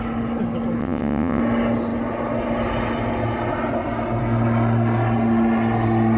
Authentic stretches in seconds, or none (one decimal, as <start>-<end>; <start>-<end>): 0.0-0.8; 1.4-6.2